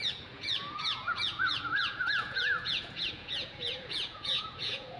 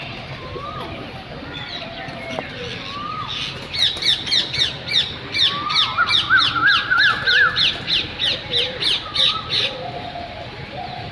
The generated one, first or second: first